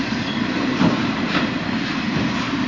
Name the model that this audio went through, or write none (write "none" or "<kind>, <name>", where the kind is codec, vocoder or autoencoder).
none